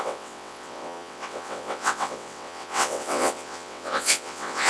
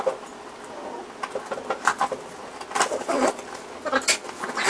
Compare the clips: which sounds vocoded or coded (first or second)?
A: first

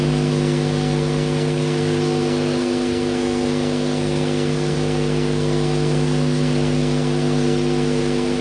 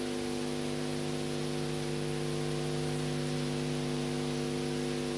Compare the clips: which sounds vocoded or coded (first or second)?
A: first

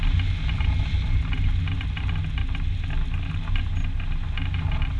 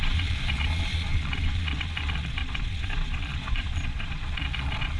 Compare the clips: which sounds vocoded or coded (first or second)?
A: second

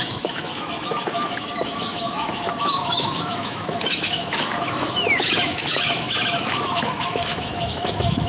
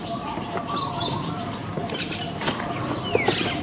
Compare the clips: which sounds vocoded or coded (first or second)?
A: first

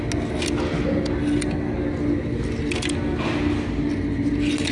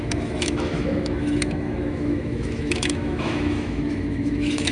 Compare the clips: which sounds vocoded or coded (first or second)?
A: second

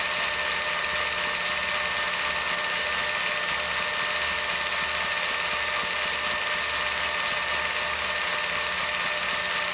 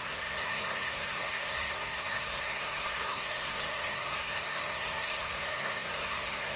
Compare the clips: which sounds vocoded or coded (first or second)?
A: second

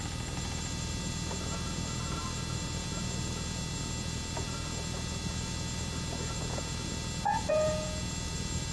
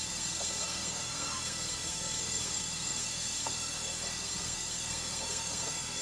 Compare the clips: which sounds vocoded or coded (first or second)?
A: second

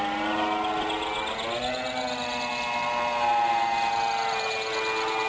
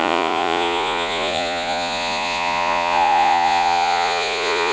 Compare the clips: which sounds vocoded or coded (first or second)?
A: second